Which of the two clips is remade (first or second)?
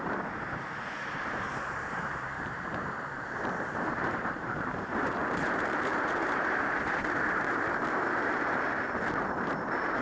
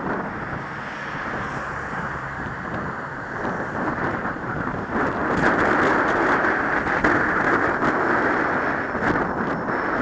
first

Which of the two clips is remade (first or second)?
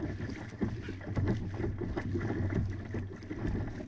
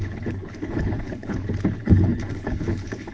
second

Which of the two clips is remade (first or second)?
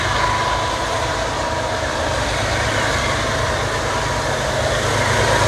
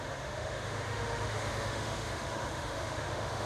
second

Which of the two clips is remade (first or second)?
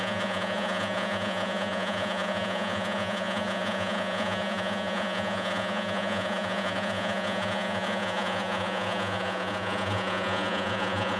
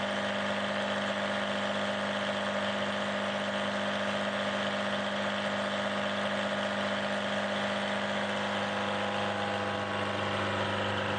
first